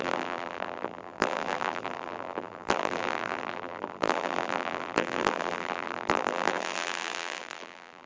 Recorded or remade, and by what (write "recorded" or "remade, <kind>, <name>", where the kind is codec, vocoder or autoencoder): remade, vocoder, BigVGAN v2